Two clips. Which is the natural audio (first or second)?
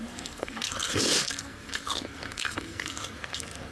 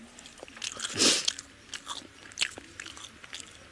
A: second